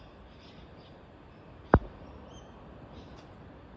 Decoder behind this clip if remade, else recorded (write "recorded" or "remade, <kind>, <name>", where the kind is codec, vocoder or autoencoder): recorded